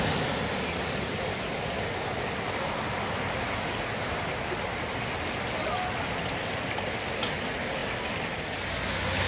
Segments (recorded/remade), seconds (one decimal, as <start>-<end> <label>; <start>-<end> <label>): 0.0-9.3 recorded